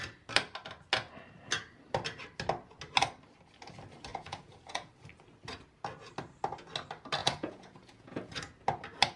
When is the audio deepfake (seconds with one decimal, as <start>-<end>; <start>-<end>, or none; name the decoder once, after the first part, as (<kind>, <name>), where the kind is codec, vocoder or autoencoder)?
4.1-4.9 (vocoder, Vocos); 7.2-8.3